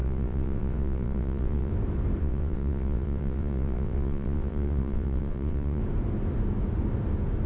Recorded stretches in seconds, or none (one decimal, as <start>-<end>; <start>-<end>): 1.7-2.2; 5.8-7.5